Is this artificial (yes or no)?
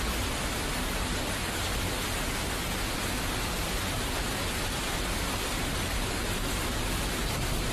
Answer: no